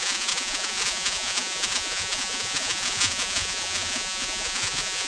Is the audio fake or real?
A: fake